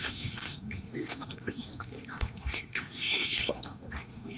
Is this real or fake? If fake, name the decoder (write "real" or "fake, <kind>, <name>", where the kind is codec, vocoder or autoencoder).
fake, codec, SNAC